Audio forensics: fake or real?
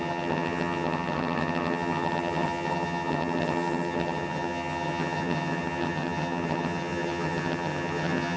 fake